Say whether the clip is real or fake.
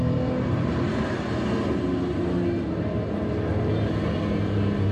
real